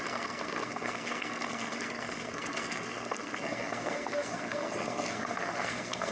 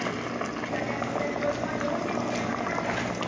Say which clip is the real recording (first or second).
second